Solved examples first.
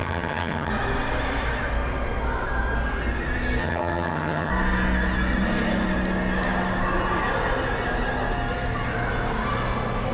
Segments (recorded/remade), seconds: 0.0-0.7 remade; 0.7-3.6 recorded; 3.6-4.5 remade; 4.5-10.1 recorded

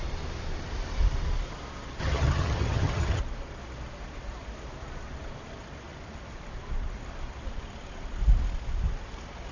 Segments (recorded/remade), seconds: 0.0-2.0 recorded; 2.0-3.2 remade; 3.2-9.5 recorded